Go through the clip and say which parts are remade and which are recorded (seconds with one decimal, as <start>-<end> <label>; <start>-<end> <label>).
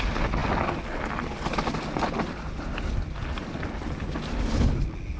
0.0-5.2 recorded